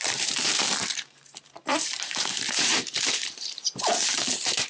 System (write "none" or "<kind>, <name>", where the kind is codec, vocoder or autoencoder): vocoder, BigVGAN v2